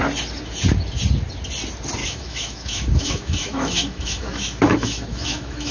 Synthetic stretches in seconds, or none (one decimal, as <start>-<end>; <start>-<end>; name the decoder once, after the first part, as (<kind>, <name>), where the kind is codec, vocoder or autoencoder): 2.0-5.7 (autoencoder, DAC-VAE)